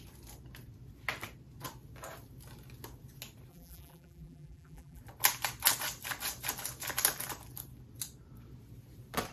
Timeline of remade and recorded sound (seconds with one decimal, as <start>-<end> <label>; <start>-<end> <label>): 0.0-3.5 recorded; 3.5-5.0 remade; 5.0-9.3 recorded